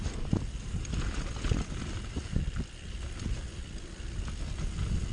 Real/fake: real